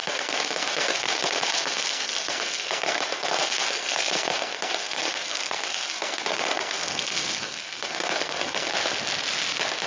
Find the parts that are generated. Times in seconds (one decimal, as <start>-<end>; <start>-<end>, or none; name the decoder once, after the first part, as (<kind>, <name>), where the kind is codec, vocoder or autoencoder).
0.0-8.7 (codec, SNAC)